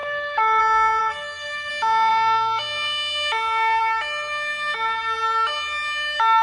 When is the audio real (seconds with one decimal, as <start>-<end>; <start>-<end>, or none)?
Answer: 0.6-1.0; 1.7-6.4